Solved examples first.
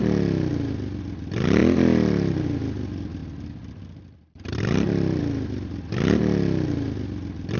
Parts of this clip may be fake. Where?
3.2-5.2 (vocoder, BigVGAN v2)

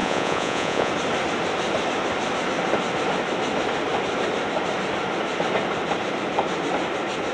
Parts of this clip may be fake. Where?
0.0-0.9 (vocoder, Vocos)